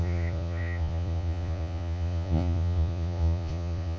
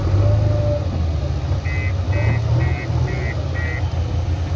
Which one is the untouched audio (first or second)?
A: second